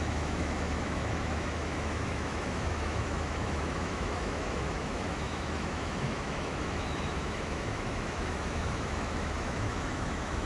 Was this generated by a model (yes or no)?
yes